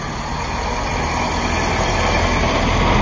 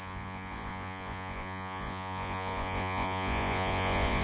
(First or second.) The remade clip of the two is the second